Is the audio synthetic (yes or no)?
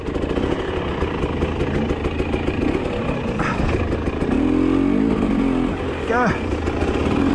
no